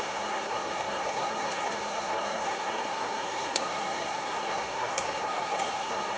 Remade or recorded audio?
remade